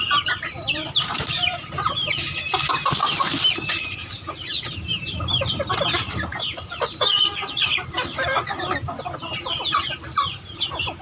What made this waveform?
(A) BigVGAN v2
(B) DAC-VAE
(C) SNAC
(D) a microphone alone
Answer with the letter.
A